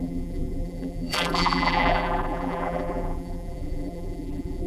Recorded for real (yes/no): no